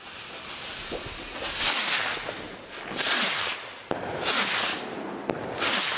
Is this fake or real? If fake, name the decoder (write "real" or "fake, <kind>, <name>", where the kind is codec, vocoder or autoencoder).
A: real